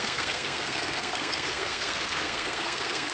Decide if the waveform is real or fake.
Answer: fake